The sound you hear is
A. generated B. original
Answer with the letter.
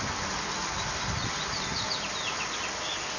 B